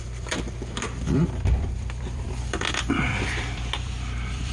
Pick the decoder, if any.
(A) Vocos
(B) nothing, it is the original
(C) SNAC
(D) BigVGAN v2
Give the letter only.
D